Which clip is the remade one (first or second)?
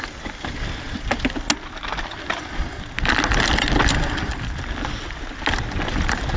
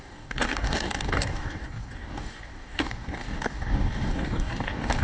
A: second